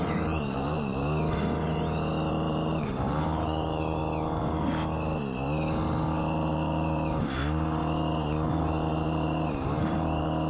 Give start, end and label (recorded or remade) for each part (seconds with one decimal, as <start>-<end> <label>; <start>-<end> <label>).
0.0-0.9 remade; 0.9-2.3 recorded; 2.3-4.0 remade; 4.0-6.2 recorded; 6.2-7.4 remade; 7.4-8.5 recorded; 8.5-10.5 remade